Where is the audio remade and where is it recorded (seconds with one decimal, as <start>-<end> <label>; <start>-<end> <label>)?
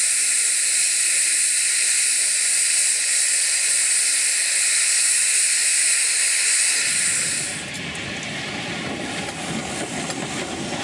0.0-10.8 recorded